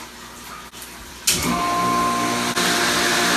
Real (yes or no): yes